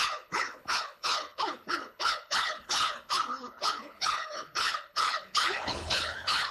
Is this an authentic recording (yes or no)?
no